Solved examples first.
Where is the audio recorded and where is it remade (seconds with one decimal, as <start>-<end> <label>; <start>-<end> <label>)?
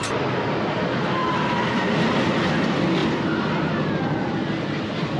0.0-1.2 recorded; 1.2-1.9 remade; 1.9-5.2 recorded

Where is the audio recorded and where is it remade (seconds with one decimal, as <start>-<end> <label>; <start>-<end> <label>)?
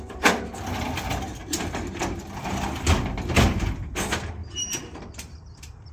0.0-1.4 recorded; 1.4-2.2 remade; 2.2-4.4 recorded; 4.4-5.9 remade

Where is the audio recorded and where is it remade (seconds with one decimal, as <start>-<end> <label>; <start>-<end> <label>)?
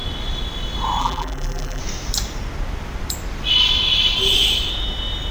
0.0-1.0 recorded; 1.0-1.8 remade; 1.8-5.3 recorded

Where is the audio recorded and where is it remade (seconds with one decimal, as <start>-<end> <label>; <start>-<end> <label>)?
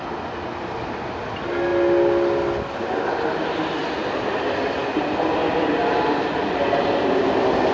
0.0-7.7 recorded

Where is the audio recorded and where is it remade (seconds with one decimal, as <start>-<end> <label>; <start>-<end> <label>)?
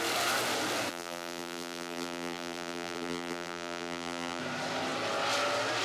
0.0-0.9 recorded; 0.9-4.4 remade; 4.4-5.8 recorded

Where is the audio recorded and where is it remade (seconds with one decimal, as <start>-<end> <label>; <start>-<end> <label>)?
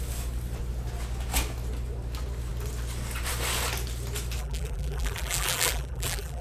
0.0-4.4 recorded; 4.4-6.4 remade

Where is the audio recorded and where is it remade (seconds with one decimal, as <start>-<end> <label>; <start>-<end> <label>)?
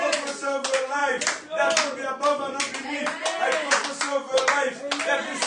0.0-3.2 recorded; 3.2-4.4 remade; 4.4-5.5 recorded